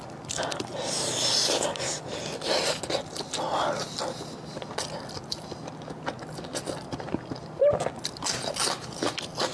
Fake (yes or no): no